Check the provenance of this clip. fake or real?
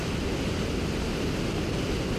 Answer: real